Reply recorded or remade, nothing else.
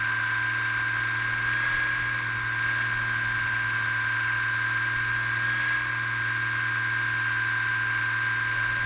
recorded